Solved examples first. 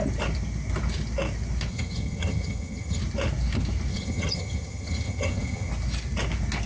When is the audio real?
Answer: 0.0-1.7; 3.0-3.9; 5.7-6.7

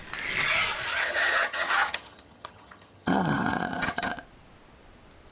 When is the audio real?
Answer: 0.0-0.9; 4.1-5.3

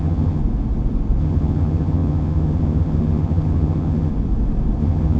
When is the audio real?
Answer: 0.4-1.2; 4.1-4.8